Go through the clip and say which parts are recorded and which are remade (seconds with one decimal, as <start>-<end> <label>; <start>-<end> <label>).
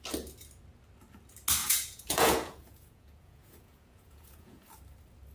0.0-1.6 recorded; 1.6-4.7 remade; 4.7-5.3 recorded